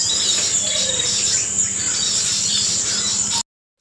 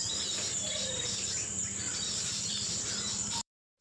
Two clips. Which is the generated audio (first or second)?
second